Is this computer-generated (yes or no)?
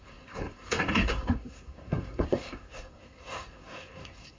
yes